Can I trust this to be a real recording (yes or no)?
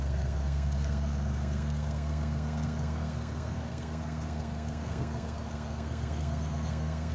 no